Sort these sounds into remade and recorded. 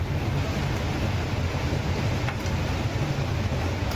recorded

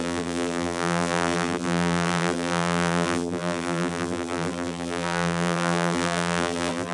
remade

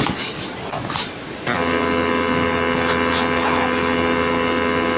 recorded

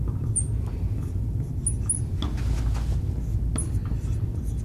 recorded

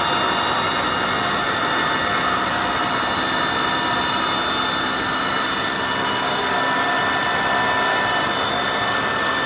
recorded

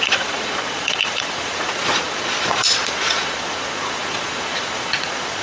remade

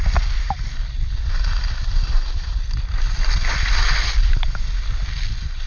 recorded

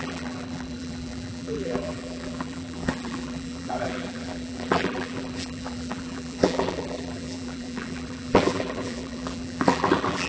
remade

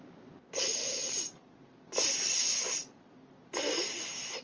recorded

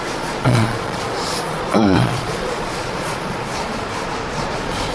remade